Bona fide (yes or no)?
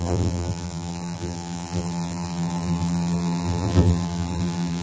no